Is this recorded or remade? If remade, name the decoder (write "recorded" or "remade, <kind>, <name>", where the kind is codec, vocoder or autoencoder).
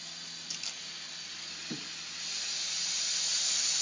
recorded